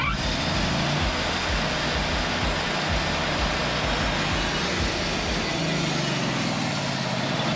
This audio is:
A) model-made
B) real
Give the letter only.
B